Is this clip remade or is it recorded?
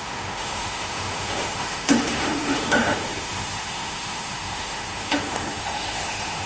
remade